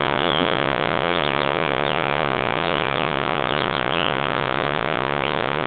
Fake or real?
fake